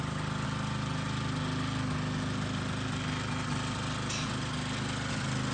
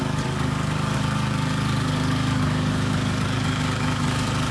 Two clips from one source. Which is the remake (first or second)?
second